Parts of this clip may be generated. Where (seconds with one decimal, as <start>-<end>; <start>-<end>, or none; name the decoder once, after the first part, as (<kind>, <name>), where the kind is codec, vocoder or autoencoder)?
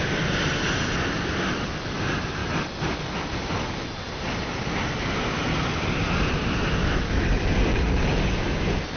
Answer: 7.7-8.4 (codec, DAC)